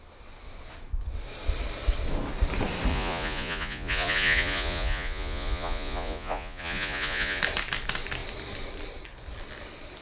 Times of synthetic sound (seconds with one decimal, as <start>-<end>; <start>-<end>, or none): 2.9-7.4